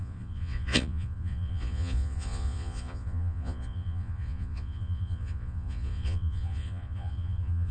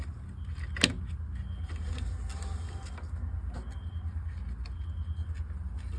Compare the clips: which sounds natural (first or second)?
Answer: second